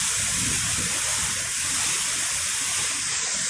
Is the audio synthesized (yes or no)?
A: yes